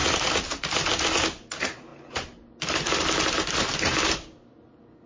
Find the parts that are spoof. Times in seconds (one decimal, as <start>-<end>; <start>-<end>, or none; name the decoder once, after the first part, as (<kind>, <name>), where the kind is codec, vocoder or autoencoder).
none